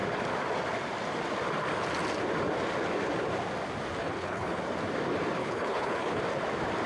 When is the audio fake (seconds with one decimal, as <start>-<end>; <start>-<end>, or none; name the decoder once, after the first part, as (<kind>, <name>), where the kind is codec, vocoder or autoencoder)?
4.0-4.6 (codec, HILCodec); 5.4-6.2